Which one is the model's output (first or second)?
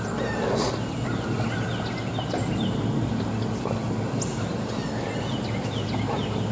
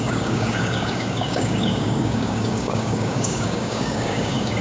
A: second